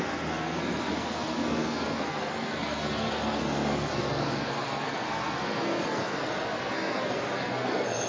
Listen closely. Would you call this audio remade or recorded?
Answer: remade